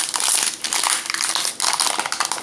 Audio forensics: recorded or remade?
recorded